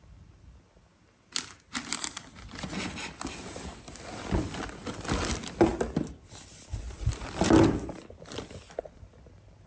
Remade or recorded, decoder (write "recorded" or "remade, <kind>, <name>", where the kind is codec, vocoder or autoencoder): recorded